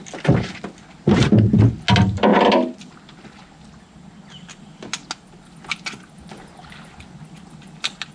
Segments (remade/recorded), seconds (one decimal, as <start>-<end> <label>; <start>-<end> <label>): 0.0-8.1 recorded